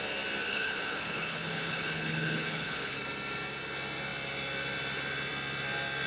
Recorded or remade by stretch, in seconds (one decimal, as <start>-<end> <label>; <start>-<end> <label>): 0.0-0.5 recorded; 0.5-3.0 remade; 3.0-6.1 recorded